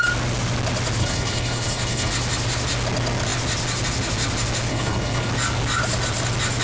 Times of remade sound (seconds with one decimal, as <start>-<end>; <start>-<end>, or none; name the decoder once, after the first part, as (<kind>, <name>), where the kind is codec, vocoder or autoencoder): 1.0-2.1 (codec, HILCodec); 4.7-5.3